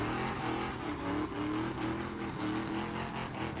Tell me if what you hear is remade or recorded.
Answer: recorded